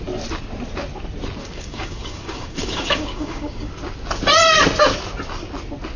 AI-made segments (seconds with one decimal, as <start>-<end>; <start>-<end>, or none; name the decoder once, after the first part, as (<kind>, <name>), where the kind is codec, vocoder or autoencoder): 1.4-3.7 (codec, DAC)